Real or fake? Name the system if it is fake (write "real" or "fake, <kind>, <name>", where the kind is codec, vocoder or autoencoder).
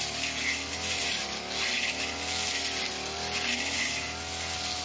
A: real